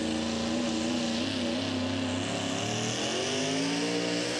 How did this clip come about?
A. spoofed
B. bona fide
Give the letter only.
B